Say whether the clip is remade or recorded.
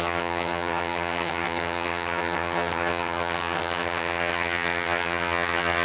remade